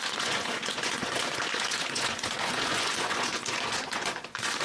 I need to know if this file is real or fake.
fake